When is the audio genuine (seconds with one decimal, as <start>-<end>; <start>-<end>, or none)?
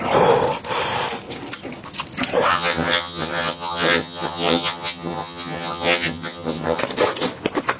0.0-2.5; 6.8-7.8